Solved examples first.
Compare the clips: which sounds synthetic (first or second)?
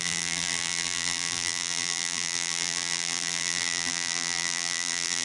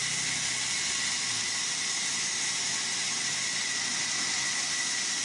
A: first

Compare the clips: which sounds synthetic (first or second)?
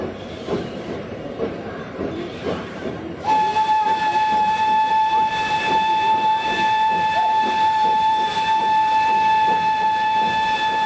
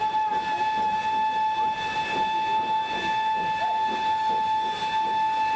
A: first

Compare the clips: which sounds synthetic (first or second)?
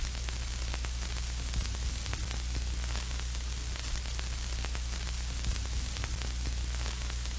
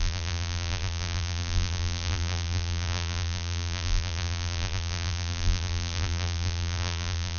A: second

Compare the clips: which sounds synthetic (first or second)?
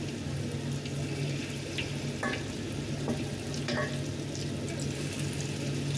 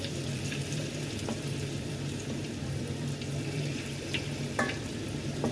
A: second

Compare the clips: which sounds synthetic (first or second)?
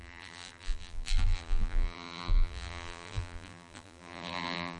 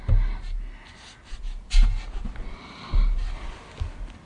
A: first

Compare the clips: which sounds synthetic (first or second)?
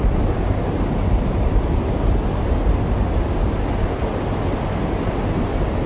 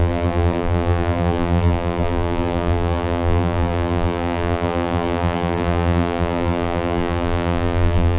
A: second